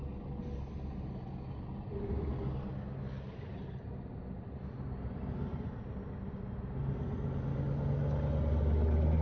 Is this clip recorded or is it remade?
recorded